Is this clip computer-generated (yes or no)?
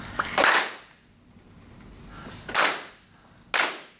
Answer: no